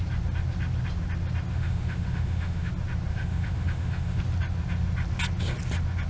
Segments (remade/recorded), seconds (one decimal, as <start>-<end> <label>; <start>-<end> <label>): 0.0-1.5 recorded; 1.5-2.7 remade; 2.7-3.1 recorded; 3.1-4.2 remade; 4.2-6.1 recorded